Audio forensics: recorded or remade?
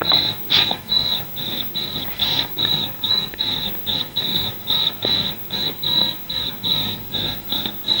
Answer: remade